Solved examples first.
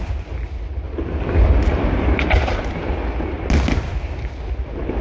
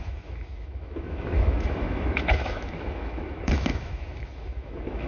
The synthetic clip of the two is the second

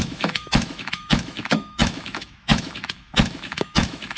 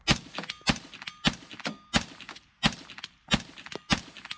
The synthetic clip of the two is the first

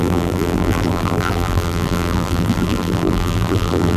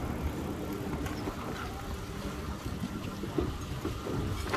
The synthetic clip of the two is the first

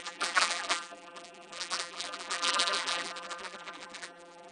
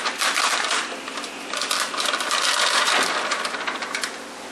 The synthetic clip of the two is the first